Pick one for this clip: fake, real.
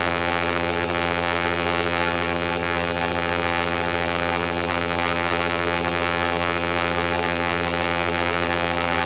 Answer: fake